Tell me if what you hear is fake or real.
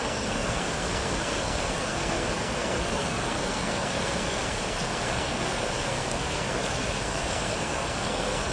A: fake